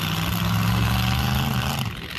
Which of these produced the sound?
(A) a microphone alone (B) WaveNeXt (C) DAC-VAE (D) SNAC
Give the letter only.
A